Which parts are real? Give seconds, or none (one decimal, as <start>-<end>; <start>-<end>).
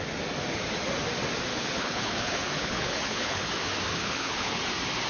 0.0-1.5; 3.5-3.9; 4.6-5.1